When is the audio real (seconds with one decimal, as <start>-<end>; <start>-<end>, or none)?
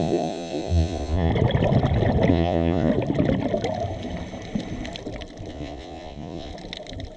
1.3-2.3; 2.9-5.5; 6.5-7.2